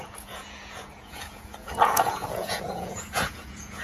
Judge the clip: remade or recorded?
remade